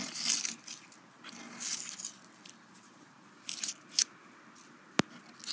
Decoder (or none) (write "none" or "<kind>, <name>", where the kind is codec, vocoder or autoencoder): none